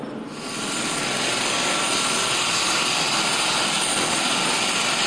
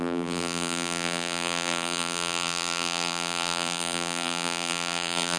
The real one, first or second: first